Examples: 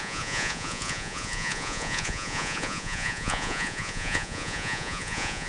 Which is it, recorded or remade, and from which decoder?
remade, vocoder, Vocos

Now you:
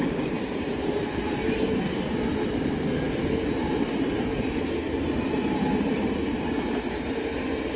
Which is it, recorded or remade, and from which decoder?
recorded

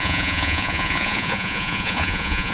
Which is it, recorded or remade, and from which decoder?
remade, vocoder, Vocos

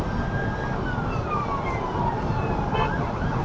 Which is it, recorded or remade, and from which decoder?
recorded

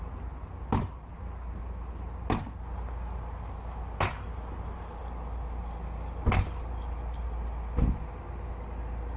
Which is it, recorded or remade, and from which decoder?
recorded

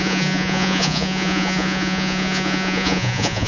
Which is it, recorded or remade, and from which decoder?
remade, vocoder, Vocos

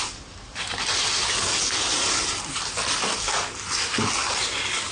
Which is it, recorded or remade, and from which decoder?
recorded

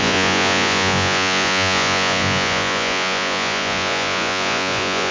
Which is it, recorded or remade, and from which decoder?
remade, vocoder, Vocos